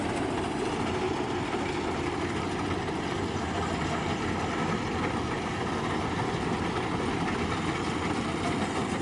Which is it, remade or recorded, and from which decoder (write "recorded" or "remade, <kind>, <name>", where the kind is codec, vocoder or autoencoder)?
recorded